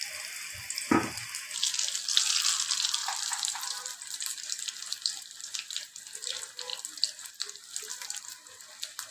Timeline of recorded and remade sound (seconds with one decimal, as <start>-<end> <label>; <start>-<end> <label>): 0.0-3.0 recorded; 3.0-3.6 remade; 3.6-5.0 recorded; 5.0-6.1 remade; 6.1-9.1 recorded